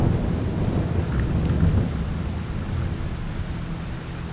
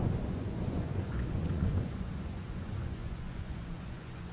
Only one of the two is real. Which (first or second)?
first